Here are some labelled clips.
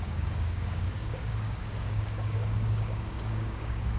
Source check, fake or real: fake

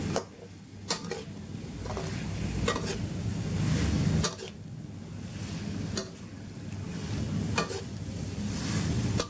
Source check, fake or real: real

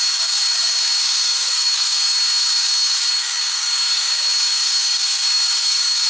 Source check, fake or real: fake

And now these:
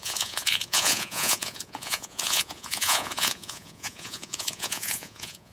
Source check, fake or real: fake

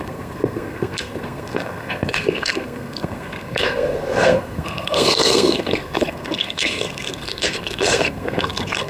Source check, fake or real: fake